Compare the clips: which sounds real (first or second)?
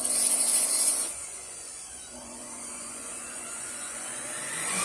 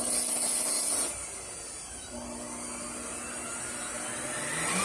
second